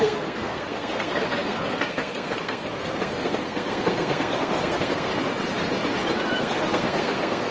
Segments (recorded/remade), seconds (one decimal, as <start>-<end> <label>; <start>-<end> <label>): 0.0-5.1 remade; 5.1-6.4 recorded; 6.4-7.5 remade